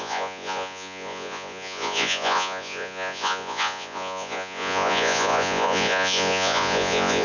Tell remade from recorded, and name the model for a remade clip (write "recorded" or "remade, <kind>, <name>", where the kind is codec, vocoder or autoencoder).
remade, vocoder, Vocos